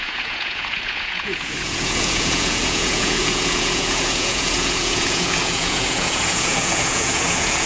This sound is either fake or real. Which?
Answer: fake